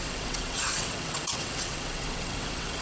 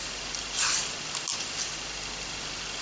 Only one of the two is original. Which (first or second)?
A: second